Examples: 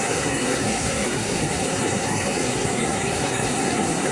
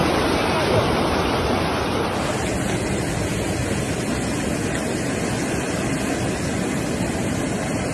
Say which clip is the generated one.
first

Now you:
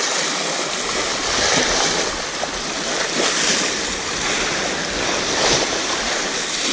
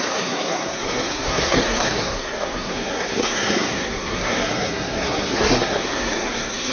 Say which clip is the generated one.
second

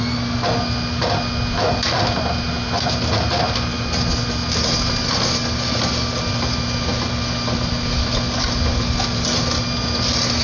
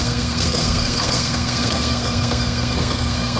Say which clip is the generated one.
second